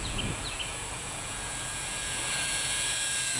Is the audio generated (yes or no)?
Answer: yes